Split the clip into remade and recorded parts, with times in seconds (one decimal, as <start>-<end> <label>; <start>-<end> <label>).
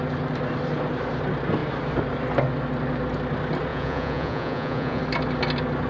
0.0-3.7 recorded; 3.7-5.0 remade; 5.0-5.9 recorded